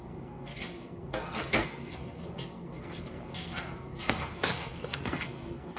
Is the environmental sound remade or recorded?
remade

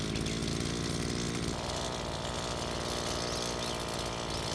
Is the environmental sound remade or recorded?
recorded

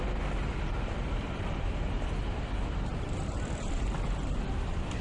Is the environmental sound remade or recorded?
recorded